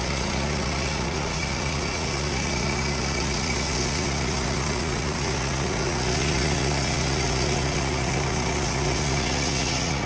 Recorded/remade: remade